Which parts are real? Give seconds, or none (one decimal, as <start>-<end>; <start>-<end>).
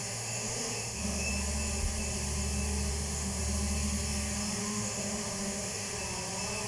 1.3-2.9; 3.4-4.6; 5.9-6.7